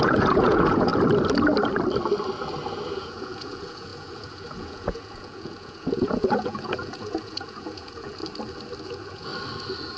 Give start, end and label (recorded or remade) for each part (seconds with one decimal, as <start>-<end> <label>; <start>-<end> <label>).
0.0-0.9 remade; 0.9-2.9 recorded; 2.9-8.2 remade; 8.2-8.8 recorded; 8.8-9.3 remade; 9.3-10.0 recorded